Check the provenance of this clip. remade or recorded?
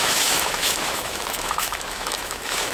remade